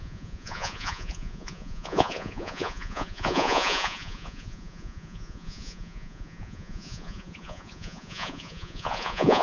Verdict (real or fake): fake